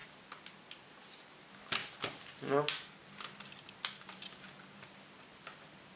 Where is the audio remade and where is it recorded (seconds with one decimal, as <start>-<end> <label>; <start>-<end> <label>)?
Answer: 0.0-6.0 recorded